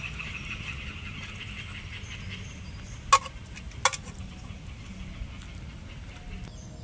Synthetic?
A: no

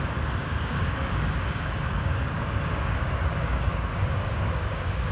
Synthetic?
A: yes